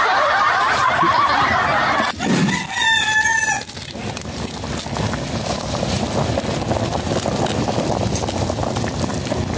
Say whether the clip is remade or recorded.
recorded